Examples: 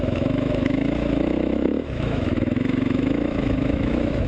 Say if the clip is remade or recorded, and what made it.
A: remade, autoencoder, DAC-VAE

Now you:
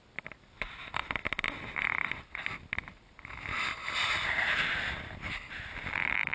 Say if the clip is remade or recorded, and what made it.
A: recorded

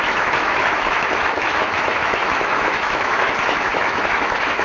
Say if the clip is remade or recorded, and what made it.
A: remade, autoencoder, DAC-VAE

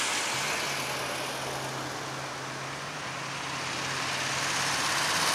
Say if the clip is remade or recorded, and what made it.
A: recorded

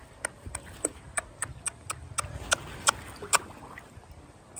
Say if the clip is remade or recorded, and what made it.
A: recorded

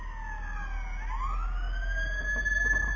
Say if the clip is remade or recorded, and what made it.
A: recorded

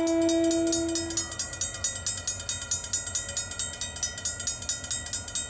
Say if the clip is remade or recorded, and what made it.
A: recorded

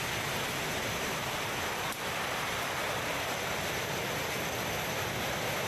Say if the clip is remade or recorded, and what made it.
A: recorded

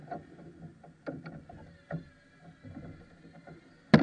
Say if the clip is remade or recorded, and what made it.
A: recorded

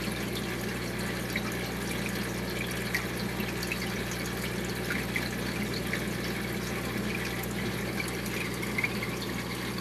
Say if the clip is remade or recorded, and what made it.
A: recorded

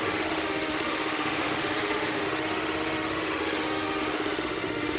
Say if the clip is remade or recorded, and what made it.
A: remade, autoencoder, DAC-VAE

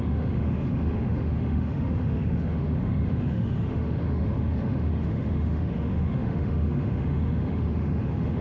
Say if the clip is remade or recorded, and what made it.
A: remade, autoencoder, DAC-VAE